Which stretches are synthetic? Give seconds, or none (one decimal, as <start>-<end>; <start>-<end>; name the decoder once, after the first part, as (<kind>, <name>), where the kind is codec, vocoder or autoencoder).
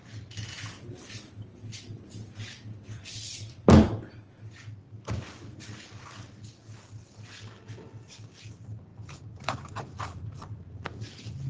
3.3-6.4 (vocoder, BigVGAN v2)